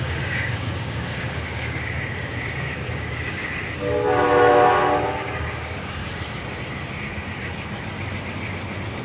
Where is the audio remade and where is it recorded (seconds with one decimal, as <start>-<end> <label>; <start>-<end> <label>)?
0.0-3.4 remade; 3.4-5.1 recorded; 5.1-6.0 remade; 6.0-9.0 recorded